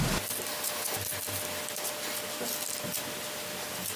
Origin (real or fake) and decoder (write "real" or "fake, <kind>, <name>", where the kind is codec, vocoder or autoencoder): real